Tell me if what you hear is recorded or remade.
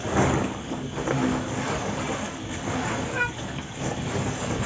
remade